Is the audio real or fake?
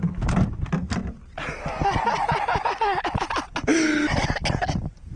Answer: real